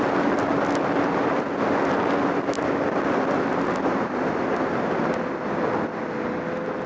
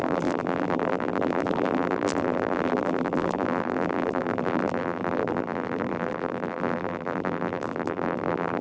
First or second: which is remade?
second